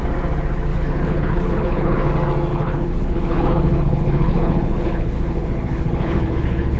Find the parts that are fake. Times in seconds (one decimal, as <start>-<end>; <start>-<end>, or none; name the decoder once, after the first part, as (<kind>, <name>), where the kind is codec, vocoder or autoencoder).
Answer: 0.7-2.1 (codec, HILCodec); 2.5-6.8